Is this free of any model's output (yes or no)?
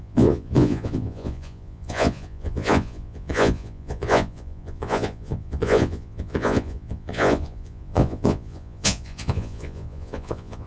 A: no